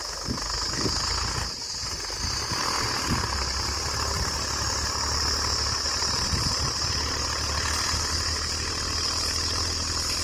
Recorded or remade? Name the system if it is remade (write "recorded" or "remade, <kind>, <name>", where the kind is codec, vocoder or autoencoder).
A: recorded